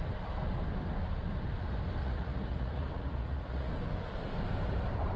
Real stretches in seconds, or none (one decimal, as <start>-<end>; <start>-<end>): 0.0-2.0; 3.7-5.2